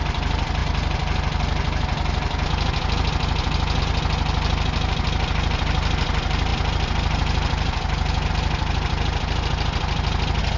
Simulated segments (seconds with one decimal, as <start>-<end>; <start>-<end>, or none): none